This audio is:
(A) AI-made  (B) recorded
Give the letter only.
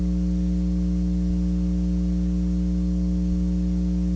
B